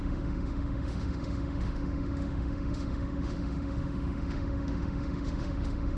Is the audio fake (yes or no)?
yes